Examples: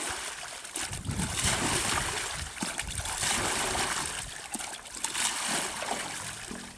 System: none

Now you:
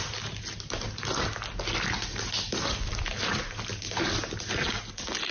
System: none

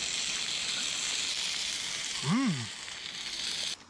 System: none